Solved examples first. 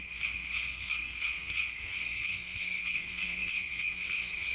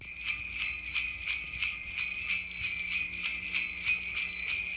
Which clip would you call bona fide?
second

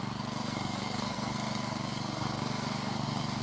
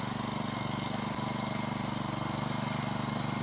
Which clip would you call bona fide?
second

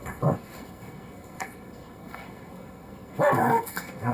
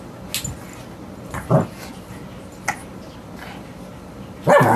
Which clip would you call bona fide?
second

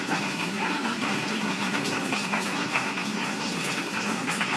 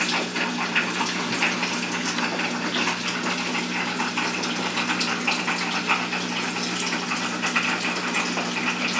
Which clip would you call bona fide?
second